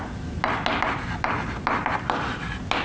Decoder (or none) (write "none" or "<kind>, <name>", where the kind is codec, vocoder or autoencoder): none